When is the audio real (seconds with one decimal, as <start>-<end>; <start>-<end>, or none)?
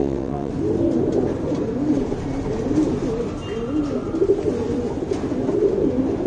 0.5-6.3